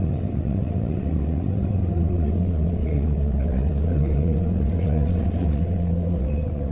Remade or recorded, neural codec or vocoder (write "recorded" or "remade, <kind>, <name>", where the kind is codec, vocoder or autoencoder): remade, vocoder, WaveNeXt